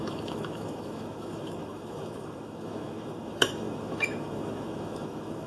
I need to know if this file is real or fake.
fake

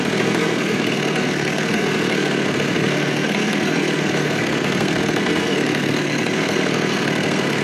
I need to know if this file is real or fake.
fake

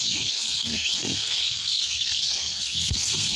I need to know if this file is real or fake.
fake